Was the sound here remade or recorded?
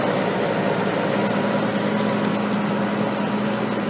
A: recorded